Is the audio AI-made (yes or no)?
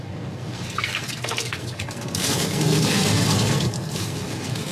yes